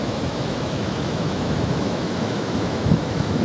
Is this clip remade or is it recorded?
remade